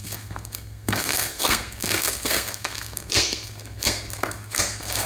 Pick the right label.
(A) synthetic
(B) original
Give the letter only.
A